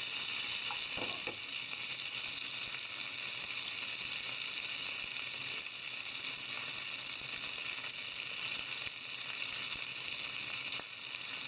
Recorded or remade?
recorded